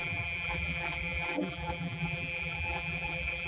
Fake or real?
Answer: fake